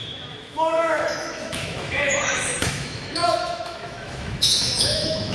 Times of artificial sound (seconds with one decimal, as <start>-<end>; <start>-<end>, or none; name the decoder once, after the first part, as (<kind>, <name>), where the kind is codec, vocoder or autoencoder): 0.0-5.3 (autoencoder, DAC-VAE)